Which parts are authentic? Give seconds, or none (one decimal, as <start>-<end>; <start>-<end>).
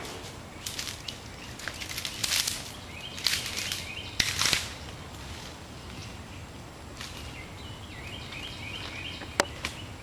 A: 0.0-10.0